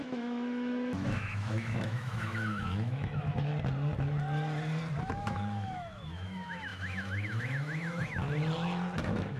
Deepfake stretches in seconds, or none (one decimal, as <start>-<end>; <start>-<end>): 0.0-3.5; 5.0-8.2; 9.0-9.4